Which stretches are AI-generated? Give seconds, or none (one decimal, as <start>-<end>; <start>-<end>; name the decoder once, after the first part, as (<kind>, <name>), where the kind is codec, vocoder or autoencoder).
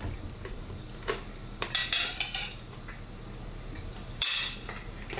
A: none